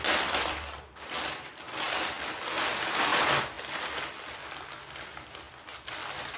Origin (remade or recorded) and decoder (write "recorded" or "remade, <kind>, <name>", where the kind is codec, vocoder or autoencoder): recorded